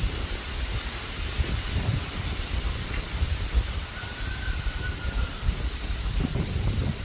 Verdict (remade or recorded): remade